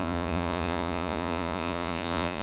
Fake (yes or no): yes